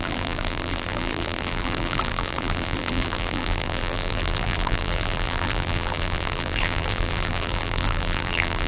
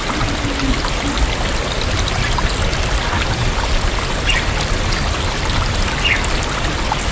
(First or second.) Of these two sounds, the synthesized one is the first